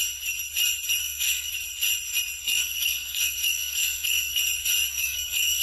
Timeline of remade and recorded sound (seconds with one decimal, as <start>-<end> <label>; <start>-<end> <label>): 0.0-1.0 recorded; 1.0-1.5 remade; 1.5-2.4 recorded; 2.4-4.4 remade; 4.4-4.9 recorded; 4.9-5.6 remade